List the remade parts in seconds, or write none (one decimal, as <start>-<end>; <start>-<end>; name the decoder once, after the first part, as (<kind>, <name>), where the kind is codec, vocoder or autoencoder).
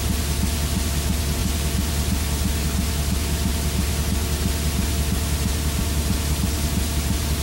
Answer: none